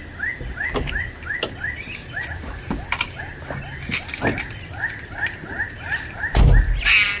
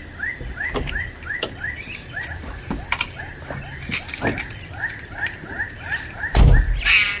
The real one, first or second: first